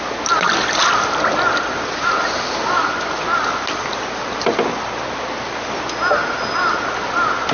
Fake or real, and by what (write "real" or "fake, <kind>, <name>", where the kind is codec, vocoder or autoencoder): real